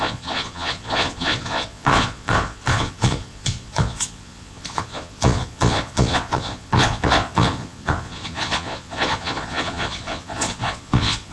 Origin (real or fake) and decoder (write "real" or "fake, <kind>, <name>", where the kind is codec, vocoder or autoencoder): fake, vocoder, Vocos